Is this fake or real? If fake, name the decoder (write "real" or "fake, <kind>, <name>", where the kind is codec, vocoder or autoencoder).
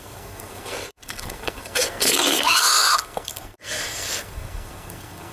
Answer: fake, codec, SNAC